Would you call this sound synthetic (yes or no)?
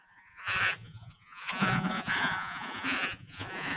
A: yes